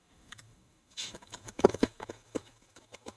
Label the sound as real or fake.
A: fake